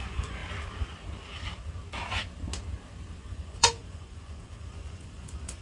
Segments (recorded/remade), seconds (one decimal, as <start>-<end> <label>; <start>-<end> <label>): 0.0-0.4 remade; 0.4-3.2 recorded; 3.2-5.6 remade